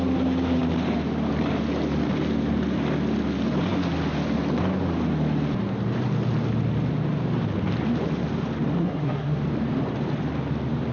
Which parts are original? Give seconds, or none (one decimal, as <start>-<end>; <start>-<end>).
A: 0.0-8.8; 9.4-10.9